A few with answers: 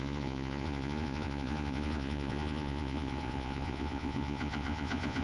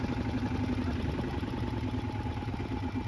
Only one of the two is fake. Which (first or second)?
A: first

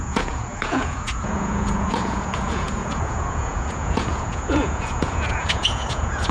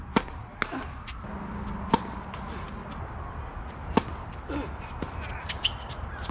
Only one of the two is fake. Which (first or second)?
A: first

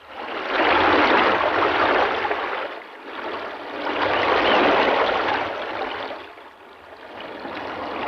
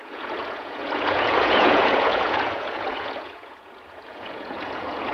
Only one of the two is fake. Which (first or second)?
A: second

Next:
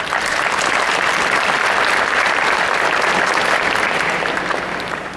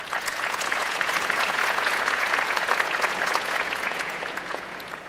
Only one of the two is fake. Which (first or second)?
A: second